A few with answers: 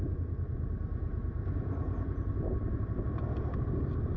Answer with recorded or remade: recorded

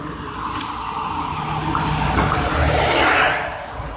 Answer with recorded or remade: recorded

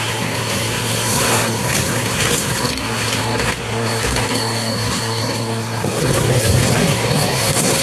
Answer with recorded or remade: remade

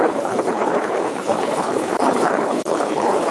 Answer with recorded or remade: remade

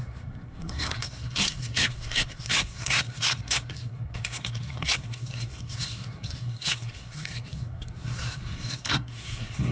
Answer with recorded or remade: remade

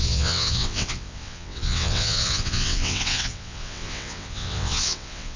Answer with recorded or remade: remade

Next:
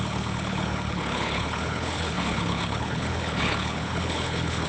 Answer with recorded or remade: remade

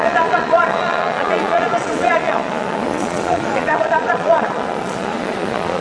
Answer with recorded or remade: remade